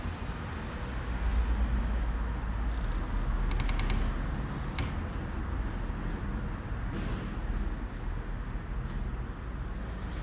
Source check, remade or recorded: recorded